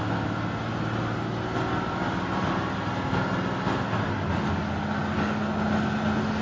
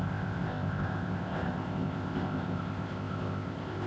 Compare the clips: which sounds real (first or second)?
first